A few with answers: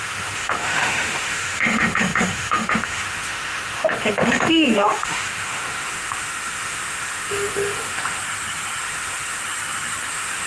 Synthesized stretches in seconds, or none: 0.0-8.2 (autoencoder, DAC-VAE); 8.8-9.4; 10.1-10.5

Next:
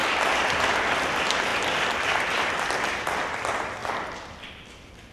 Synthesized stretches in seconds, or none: 0.0-0.7 (vocoder, BigVGAN v2); 1.5-2.5; 3.8-4.5